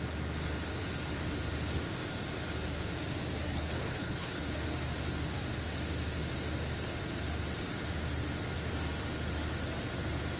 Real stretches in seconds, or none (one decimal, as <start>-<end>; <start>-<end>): 0.0-3.5; 4.4-10.4

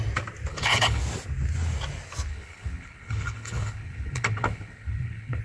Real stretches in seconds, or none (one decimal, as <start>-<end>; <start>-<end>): 0.0-0.5; 1.0-2.3

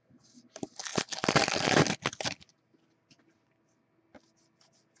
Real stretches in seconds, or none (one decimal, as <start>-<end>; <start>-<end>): 0.0-5.0

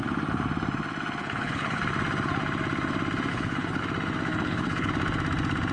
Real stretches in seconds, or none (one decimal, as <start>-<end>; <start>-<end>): 0.0-1.2; 1.8-3.3; 3.8-4.3; 4.9-5.7

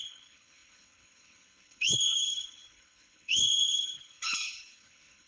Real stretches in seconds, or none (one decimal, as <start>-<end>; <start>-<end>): none

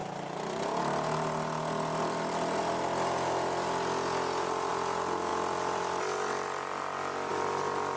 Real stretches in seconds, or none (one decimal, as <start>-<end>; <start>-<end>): 0.0-8.0

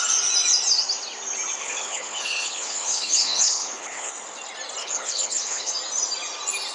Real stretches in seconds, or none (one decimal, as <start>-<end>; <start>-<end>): 0.0-1.6; 4.1-4.8; 5.7-6.7